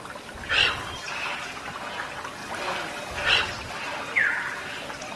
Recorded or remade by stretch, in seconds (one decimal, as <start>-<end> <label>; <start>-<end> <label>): 0.0-5.2 recorded

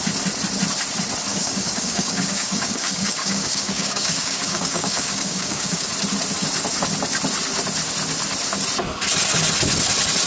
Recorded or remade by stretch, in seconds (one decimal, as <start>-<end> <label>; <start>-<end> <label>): 0.0-1.3 recorded; 1.3-5.9 remade; 5.9-10.3 recorded